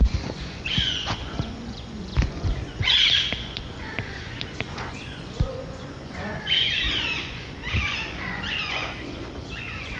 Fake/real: fake